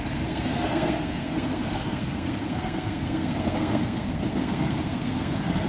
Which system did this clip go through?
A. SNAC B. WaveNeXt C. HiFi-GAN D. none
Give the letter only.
A